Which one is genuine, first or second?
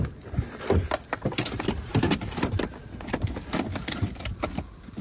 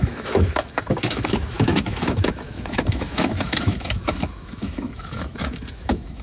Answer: first